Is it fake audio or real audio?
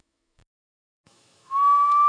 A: fake